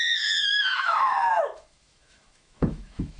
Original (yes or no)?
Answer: no